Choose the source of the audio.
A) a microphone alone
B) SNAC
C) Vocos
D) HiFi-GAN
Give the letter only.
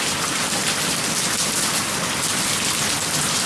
A